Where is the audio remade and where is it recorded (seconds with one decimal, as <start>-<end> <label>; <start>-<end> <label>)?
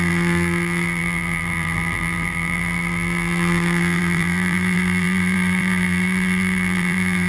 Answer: 0.0-7.3 remade